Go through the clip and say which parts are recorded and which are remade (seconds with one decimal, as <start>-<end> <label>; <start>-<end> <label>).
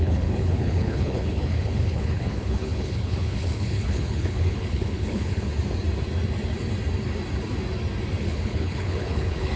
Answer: 0.0-5.5 remade; 5.5-8.2 recorded; 8.2-9.6 remade